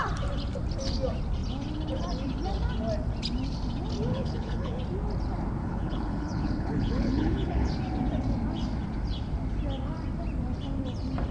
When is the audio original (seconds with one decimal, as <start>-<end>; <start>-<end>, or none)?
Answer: 0.0-4.1; 4.8-5.6; 7.7-11.3